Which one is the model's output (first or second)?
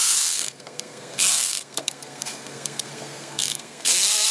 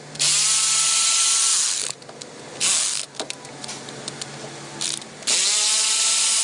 first